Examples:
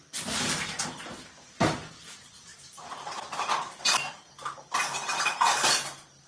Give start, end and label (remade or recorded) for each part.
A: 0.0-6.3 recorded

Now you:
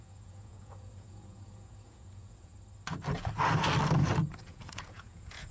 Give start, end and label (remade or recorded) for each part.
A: 0.0-2.5 remade; 2.5-4.4 recorded; 4.4-5.5 remade

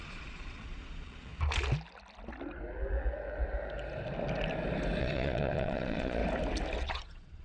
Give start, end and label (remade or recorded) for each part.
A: 0.0-1.3 remade; 1.3-5.0 recorded; 5.0-6.2 remade; 6.2-6.8 recorded; 6.8-7.4 remade